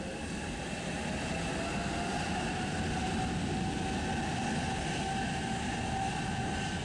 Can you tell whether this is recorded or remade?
recorded